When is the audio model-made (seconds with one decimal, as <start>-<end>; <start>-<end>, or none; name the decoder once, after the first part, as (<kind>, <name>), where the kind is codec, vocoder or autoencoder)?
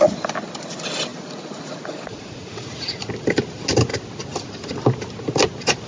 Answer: 1.1-3.1 (vocoder, Vocos)